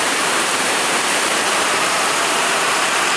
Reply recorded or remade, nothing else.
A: remade